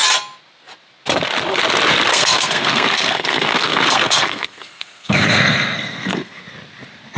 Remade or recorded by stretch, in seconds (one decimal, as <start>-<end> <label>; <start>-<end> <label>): 0.0-2.1 recorded; 2.1-6.4 remade; 6.4-7.2 recorded